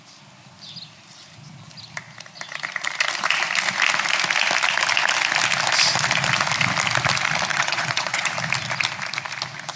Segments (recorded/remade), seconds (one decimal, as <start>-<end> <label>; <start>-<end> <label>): 0.0-7.5 recorded; 7.5-8.3 remade; 8.3-9.8 recorded